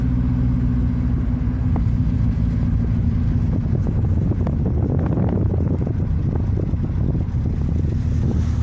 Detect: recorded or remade recorded